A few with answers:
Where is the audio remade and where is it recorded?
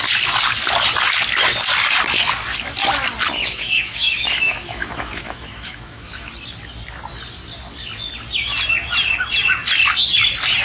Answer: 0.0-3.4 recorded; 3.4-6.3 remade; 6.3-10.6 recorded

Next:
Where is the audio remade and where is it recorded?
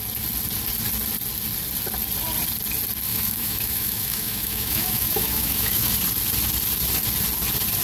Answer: 0.0-3.1 recorded; 3.1-5.9 remade; 5.9-7.8 recorded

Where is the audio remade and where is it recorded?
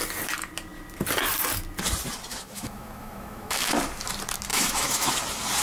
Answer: 0.0-2.3 recorded; 2.3-3.8 remade; 3.8-4.5 recorded; 4.5-5.1 remade; 5.1-5.6 recorded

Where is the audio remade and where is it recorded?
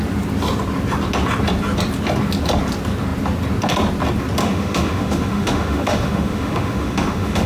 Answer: 0.0-4.4 recorded; 4.4-7.5 remade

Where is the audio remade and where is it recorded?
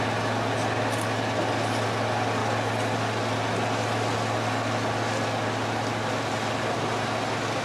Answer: 0.0-7.6 recorded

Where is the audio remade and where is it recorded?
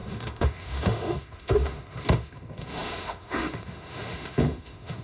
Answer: 0.0-5.0 remade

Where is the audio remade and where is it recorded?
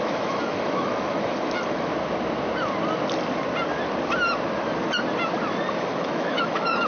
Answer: 0.0-1.9 remade; 1.9-5.8 recorded; 5.8-6.9 remade